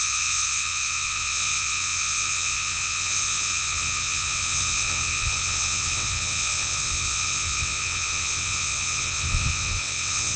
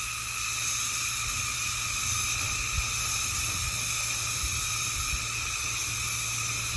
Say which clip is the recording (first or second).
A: second